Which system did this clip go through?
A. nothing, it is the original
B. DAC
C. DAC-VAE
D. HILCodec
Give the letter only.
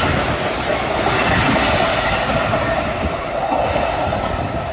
A